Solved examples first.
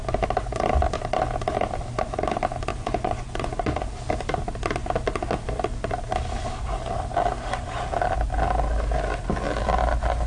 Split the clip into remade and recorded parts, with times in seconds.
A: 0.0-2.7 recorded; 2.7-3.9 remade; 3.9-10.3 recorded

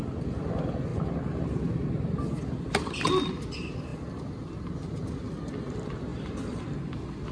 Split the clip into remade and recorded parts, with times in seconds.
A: 0.0-7.3 recorded

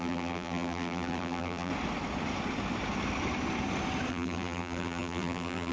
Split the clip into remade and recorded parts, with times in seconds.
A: 0.0-1.7 remade; 1.7-4.1 recorded; 4.1-5.7 remade

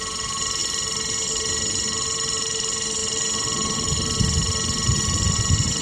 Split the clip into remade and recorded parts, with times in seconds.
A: 0.0-5.8 recorded

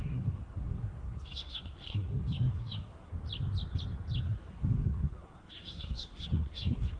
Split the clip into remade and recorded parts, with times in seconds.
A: 0.0-3.1 remade; 3.1-4.2 recorded; 4.2-7.0 remade

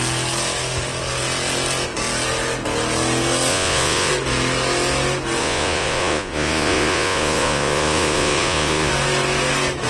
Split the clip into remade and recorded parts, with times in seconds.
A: 0.0-3.5 recorded; 3.5-4.1 remade; 4.1-5.4 recorded; 5.4-8.9 remade; 8.9-9.9 recorded

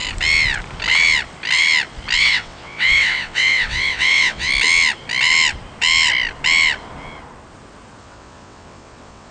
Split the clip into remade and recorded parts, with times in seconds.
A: 0.0-2.2 recorded; 2.2-4.5 remade; 4.5-8.0 recorded; 8.0-9.3 remade